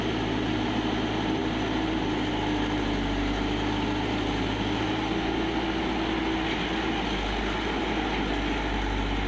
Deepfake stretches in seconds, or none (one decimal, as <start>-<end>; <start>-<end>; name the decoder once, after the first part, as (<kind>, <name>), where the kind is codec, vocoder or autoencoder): none

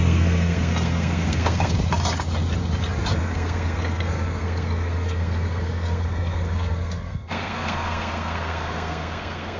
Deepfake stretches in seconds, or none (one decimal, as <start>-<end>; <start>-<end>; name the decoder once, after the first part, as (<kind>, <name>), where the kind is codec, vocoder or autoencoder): 0.0-1.8 (codec, SNAC); 3.1-9.6

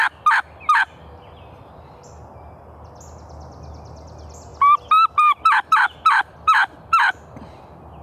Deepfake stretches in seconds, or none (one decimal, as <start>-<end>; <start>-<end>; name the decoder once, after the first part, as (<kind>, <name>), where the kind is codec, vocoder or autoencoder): none

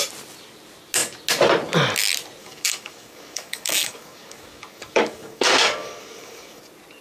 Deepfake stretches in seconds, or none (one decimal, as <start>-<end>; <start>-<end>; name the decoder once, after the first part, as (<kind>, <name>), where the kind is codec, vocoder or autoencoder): 2.4-6.6 (codec, DAC)

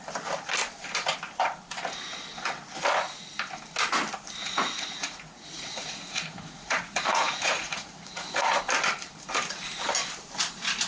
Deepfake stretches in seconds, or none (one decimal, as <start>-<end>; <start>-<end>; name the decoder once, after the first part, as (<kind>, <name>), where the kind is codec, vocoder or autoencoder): 4.4-8.6 (vocoder, Vocos)

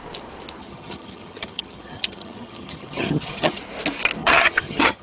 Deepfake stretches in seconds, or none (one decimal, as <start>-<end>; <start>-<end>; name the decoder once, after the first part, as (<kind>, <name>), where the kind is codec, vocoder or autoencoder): 0.6-3.6 (vocoder, HiFi-GAN); 4.2-5.0